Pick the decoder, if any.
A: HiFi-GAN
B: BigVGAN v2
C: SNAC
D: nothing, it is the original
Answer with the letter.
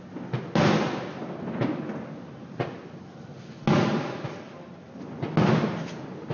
D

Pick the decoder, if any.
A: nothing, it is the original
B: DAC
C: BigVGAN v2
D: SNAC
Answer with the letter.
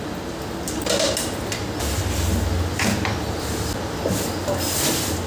A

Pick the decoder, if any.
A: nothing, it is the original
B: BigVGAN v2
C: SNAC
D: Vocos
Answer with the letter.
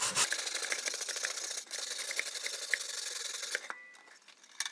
A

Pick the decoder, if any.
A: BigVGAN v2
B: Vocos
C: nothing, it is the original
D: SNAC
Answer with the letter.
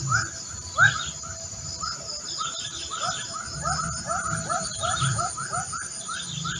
C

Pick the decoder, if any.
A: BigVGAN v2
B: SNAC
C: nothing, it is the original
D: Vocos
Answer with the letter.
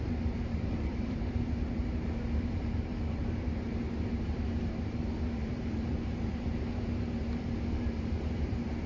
A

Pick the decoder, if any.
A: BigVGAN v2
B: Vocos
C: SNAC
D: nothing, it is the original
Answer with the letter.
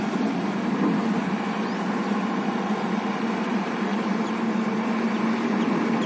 A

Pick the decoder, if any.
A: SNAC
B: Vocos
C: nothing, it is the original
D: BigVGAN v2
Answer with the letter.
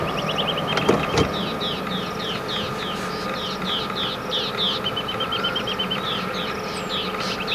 C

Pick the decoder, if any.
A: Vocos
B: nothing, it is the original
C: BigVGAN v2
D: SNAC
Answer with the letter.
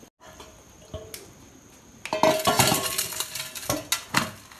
B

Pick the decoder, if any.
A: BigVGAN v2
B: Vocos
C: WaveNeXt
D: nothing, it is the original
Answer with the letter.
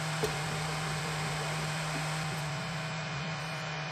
A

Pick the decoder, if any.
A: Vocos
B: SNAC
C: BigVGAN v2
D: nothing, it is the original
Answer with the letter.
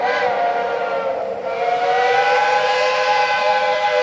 C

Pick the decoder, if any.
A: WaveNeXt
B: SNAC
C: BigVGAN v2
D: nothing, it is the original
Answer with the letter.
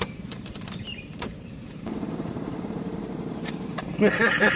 C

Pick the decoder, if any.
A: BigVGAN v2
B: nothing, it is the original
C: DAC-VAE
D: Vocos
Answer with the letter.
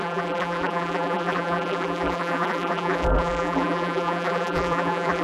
A